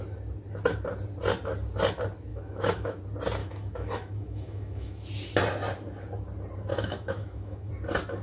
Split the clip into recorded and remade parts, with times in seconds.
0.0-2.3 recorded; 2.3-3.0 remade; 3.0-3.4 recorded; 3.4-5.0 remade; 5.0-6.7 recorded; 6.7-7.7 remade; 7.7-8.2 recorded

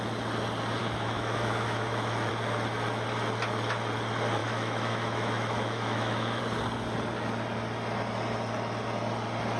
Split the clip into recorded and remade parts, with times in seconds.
0.0-0.8 recorded; 0.8-2.3 remade; 2.3-4.4 recorded; 4.4-6.4 remade; 6.4-9.6 recorded

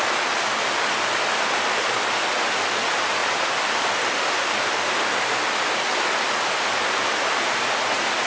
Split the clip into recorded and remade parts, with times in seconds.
0.0-8.3 recorded

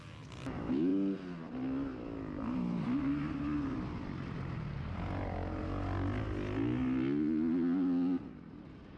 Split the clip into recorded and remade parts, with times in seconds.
0.0-9.0 recorded

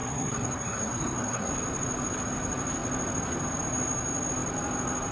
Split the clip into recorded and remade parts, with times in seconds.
0.0-1.5 remade; 1.5-5.1 recorded